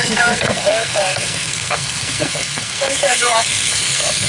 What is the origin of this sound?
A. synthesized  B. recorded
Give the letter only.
A